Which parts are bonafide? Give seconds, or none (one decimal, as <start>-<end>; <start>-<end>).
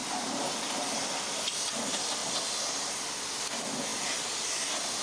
0.8-2.2; 2.9-5.0